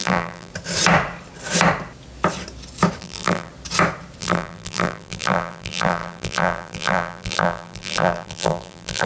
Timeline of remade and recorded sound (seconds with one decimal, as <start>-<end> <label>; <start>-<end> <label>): 0.0-0.5 remade; 0.5-3.0 recorded; 3.0-3.5 remade; 3.5-4.2 recorded; 4.2-9.1 remade